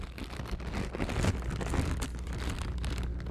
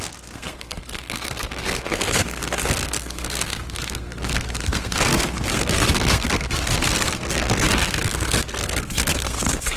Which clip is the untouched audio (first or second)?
first